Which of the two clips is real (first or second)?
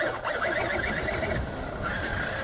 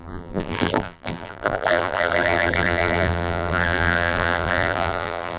first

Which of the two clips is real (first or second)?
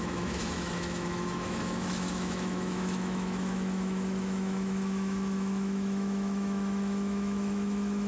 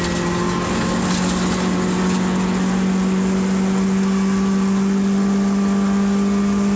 second